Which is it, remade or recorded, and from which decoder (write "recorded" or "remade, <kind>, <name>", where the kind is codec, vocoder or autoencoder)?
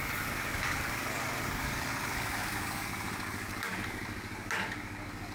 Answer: remade, codec, DAC